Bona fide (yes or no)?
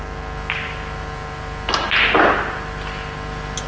yes